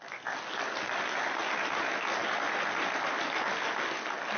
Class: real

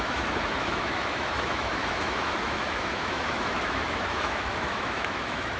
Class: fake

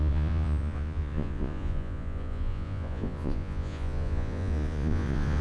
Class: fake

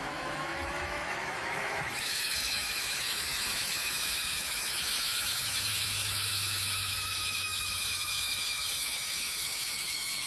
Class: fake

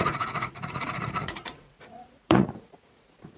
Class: fake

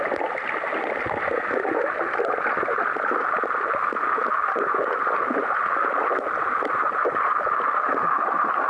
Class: real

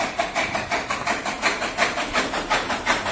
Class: real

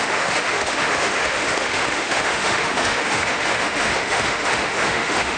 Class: fake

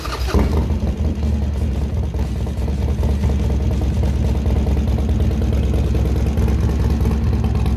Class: real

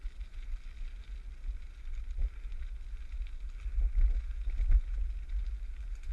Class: real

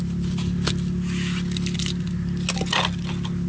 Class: real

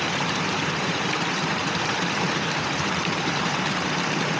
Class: fake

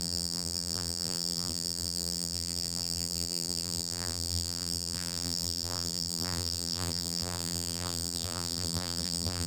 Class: fake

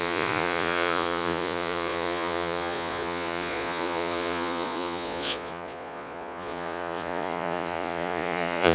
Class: fake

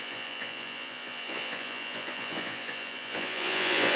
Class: fake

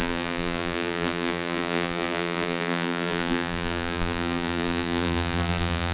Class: fake